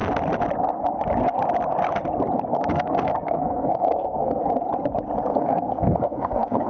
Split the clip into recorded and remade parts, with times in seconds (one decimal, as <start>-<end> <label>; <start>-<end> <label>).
0.0-2.5 recorded; 2.5-4.4 remade; 4.4-5.3 recorded; 5.3-6.7 remade